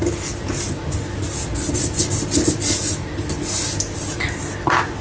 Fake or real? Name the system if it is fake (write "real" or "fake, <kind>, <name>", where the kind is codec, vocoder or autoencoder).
real